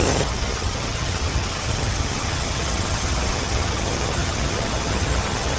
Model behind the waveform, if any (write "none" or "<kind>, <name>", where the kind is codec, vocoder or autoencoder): vocoder, HiFi-GAN